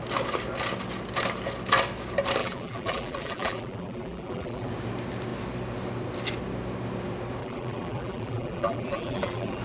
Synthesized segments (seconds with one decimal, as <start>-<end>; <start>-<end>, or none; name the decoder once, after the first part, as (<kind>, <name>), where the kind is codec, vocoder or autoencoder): 2.4-4.7 (vocoder, BigVGAN v2); 7.4-9.6

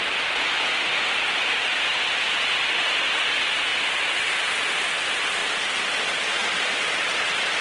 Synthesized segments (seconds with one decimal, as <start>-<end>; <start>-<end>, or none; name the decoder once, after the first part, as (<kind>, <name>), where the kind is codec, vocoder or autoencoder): none

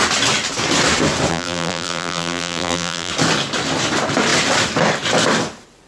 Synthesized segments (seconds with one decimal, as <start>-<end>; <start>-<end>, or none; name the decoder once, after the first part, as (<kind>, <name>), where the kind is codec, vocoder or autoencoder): 1.3-3.1 (vocoder, BigVGAN v2)

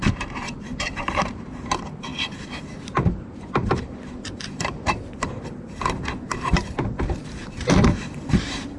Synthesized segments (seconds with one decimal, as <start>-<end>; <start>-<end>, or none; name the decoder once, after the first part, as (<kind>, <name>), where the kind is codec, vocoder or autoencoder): 0.0-8.8 (vocoder, BigVGAN v2)

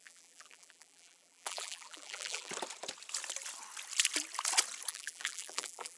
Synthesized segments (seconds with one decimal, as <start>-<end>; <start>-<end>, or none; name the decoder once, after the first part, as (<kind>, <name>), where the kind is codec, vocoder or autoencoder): 0.0-2.5 (vocoder, BigVGAN v2); 4.9-6.0

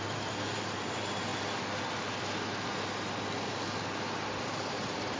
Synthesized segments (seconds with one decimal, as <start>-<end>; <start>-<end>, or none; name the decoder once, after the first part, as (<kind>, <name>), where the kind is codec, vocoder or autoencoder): 0.0-1.3 (vocoder, BigVGAN v2); 4.4-5.2